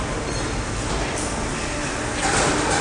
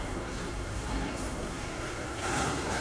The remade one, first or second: second